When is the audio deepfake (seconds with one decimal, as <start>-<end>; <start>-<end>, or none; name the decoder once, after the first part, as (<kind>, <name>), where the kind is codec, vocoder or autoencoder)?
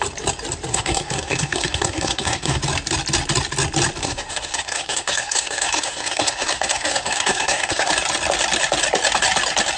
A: 0.7-2.6 (codec, SNAC); 4.0-7.9